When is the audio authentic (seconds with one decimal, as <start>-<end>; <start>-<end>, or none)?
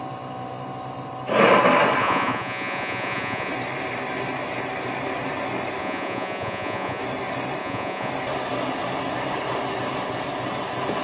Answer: 0.0-2.0; 3.5-5.8; 7.0-7.6; 8.1-11.0